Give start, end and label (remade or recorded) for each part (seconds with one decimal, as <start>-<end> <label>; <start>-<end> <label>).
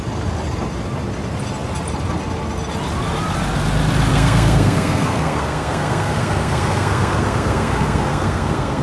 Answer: 0.0-4.1 recorded; 4.1-8.8 remade